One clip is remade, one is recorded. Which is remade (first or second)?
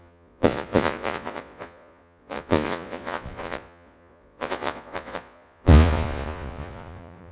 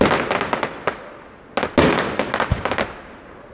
first